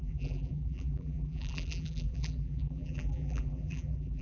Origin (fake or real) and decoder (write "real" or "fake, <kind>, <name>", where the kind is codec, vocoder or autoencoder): fake, vocoder, BigVGAN v2